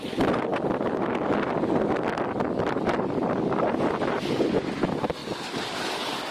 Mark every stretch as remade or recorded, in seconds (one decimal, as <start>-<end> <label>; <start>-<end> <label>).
0.0-0.5 remade; 0.5-2.6 recorded; 2.6-6.3 remade